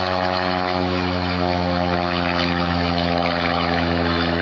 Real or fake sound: fake